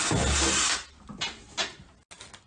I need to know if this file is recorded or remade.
recorded